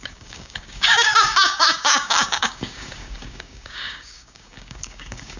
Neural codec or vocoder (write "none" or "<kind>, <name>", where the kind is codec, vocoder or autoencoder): codec, DAC